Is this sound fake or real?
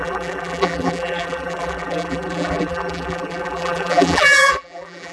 fake